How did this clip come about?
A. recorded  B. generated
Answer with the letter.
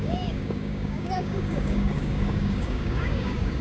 B